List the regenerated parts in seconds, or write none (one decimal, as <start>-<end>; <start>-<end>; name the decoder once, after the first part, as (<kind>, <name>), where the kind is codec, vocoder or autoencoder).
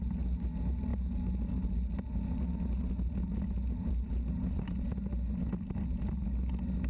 none